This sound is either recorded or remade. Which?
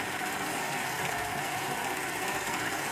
remade